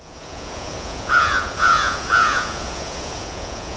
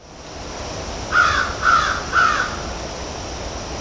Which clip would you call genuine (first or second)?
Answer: second